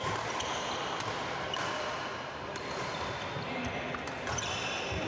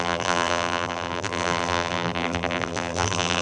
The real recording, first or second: first